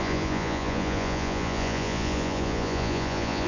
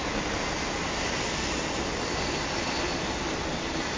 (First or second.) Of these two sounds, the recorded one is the second